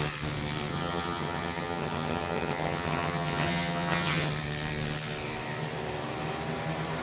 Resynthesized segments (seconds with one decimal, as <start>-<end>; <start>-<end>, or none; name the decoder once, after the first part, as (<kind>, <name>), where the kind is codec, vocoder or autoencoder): 0.7-4.3 (vocoder, HiFi-GAN)